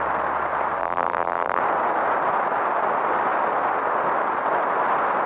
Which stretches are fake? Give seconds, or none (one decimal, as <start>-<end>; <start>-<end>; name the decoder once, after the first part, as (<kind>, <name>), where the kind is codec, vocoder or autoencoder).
0.8-1.6 (vocoder, BigVGAN v2)